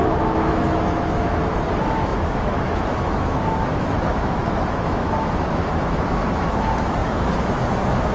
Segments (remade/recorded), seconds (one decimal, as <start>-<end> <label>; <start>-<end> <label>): 0.0-8.1 remade